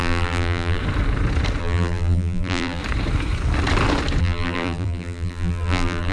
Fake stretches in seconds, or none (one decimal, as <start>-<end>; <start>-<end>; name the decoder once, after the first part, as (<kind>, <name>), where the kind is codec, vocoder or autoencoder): 0.0-0.8 (vocoder, BigVGAN v2); 1.6-2.8; 4.2-6.1